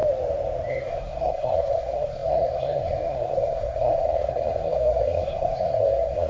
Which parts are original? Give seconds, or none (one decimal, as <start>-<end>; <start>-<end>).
0.0-0.7